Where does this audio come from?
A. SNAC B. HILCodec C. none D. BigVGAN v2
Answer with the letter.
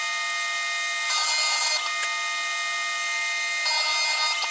C